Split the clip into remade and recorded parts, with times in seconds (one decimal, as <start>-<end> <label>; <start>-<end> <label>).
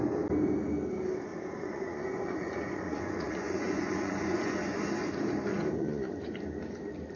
0.0-1.3 recorded; 1.3-4.8 remade; 4.8-5.5 recorded; 5.5-6.3 remade; 6.3-7.2 recorded